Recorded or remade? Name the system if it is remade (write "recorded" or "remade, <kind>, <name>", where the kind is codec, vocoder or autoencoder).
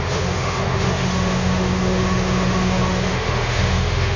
remade, autoencoder, DAC-VAE